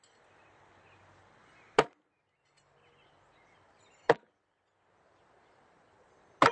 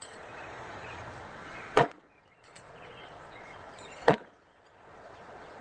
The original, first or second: first